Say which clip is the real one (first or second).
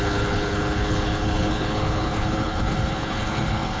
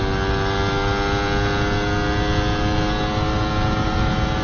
second